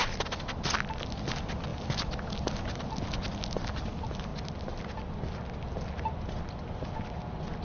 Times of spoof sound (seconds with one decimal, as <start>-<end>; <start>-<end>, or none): none